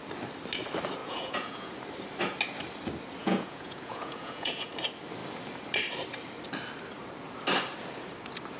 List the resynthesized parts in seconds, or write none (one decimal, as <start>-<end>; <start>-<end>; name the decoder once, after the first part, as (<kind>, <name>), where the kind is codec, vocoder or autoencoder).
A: 1.0-1.7 (vocoder, Vocos); 3.2-4.7